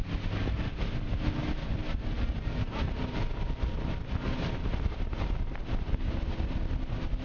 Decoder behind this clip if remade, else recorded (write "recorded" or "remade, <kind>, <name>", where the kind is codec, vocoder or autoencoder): recorded